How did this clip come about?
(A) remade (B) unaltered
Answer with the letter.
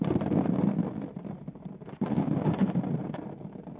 B